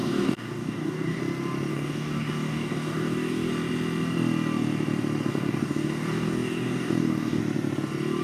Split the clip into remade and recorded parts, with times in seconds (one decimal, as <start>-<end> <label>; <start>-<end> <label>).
0.0-1.2 remade; 1.2-1.7 recorded; 1.7-3.5 remade; 3.5-5.3 recorded; 5.3-7.4 remade; 7.4-8.2 recorded